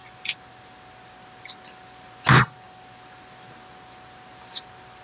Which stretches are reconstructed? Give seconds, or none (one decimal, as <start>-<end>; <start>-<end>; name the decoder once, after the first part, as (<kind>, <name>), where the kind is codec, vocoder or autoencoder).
none